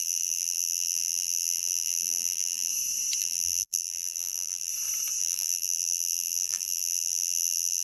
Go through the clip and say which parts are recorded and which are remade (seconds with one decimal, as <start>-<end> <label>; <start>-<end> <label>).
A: 0.0-2.7 remade; 2.7-3.2 recorded; 3.2-4.7 remade; 4.7-5.2 recorded; 5.2-7.8 remade